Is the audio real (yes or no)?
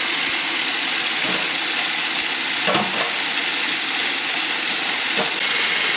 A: yes